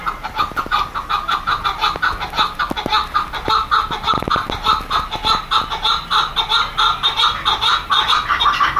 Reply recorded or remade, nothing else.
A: recorded